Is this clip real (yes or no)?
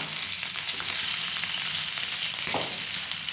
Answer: yes